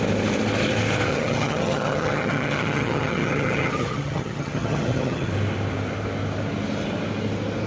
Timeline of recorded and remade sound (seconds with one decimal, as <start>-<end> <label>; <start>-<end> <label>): 0.0-1.1 recorded; 1.1-5.3 remade; 5.3-7.7 recorded